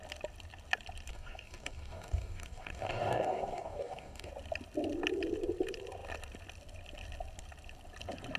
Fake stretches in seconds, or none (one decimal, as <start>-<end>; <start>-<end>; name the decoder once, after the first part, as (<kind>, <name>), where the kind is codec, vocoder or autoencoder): 1.1-4.3 (codec, DAC)